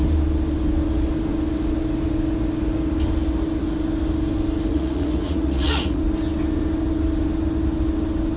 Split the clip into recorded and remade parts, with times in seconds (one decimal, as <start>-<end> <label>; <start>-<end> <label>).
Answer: 0.0-4.7 recorded; 4.7-6.0 remade; 6.0-8.4 recorded